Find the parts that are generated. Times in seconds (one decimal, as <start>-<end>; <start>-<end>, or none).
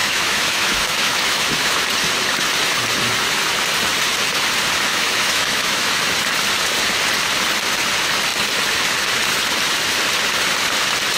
0.0-1.8; 4.9-6.0